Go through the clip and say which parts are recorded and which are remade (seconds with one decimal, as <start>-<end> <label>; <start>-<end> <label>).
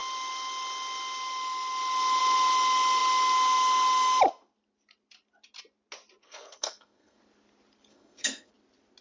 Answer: 0.0-6.2 recorded; 6.2-7.2 remade; 7.2-7.9 recorded; 7.9-8.5 remade; 8.5-9.0 recorded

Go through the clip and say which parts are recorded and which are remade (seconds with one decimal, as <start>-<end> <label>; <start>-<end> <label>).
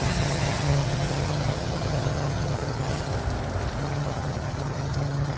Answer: 0.0-3.1 remade; 3.1-3.8 recorded; 3.8-5.4 remade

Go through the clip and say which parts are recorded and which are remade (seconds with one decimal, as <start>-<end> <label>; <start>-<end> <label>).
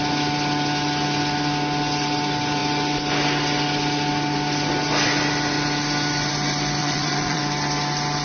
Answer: 0.0-6.8 recorded; 6.8-7.4 remade; 7.4-8.2 recorded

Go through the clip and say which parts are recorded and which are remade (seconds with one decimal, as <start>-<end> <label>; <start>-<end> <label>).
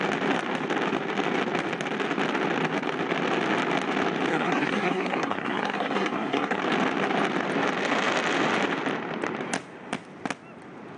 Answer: 0.0-4.3 recorded; 4.3-6.6 remade; 6.6-11.0 recorded